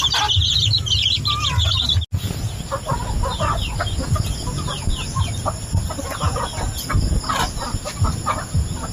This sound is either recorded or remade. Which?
recorded